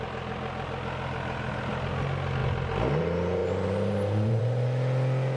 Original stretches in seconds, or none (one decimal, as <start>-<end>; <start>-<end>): 0.0-3.4; 4.4-5.4